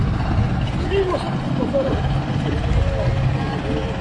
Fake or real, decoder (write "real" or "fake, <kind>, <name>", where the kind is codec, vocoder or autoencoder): real